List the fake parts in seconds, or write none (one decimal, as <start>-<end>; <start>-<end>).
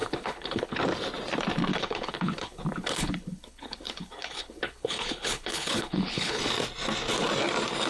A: 0.0-0.8; 1.7-6.4